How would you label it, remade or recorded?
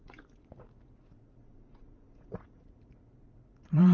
remade